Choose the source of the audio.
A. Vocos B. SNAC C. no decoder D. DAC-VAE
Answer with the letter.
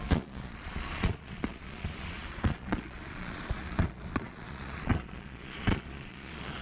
A